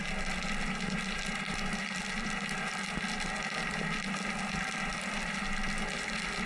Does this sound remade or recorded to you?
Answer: recorded